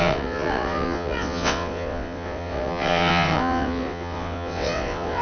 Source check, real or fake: fake